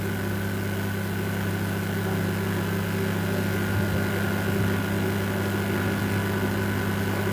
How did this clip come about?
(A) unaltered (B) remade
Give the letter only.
A